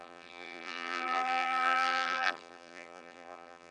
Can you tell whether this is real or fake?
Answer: fake